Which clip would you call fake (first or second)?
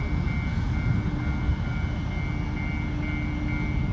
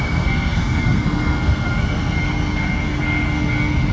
second